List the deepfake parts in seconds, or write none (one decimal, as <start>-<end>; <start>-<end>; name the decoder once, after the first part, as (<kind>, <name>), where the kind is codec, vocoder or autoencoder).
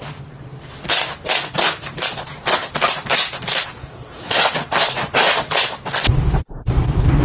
3.8-4.4 (codec, SNAC)